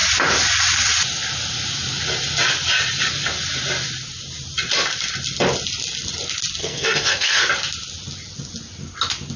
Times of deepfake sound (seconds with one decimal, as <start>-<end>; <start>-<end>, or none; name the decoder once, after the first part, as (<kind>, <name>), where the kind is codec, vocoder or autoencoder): 6.6-7.5 (codec, SNAC)